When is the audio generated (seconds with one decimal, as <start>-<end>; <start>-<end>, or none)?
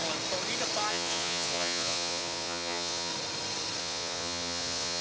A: 0.9-3.1; 3.8-5.0